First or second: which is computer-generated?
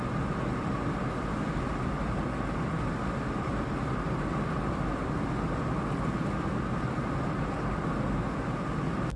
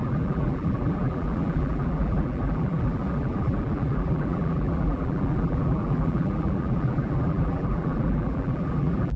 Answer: second